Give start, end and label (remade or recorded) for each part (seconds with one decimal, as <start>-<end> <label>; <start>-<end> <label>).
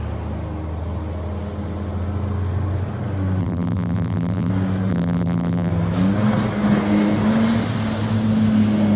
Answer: 0.0-3.4 recorded; 3.4-4.5 remade; 4.5-4.9 recorded; 4.9-5.7 remade; 5.7-9.0 recorded